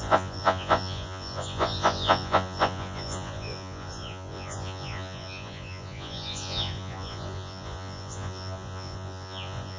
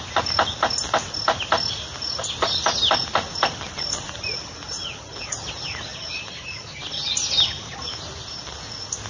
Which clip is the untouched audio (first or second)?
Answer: second